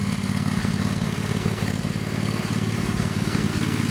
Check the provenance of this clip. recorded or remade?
remade